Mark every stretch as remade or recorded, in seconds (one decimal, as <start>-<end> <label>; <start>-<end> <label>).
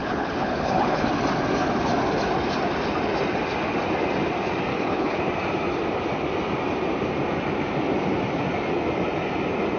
0.0-1.1 remade; 1.1-4.7 recorded; 4.7-5.2 remade; 5.2-9.8 recorded